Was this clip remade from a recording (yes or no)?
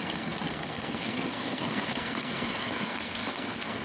yes